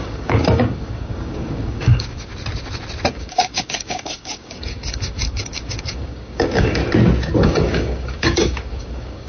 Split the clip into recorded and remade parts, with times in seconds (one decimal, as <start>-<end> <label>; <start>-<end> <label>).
0.0-2.3 remade; 2.3-3.1 recorded; 3.1-6.8 remade; 6.8-7.4 recorded; 7.4-9.3 remade